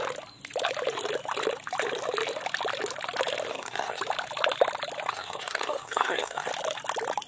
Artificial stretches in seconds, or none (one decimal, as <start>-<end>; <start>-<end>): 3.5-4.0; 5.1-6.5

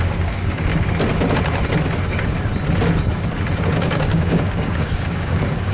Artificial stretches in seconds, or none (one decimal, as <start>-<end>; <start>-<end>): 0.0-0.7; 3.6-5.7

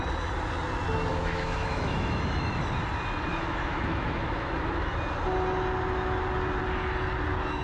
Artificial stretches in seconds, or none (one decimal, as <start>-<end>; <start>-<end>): 1.1-2.6; 3.3-4.9